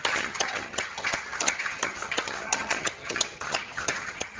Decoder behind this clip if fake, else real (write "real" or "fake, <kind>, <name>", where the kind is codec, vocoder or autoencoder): fake, vocoder, HiFi-GAN